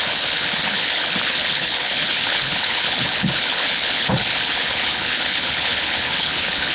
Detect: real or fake fake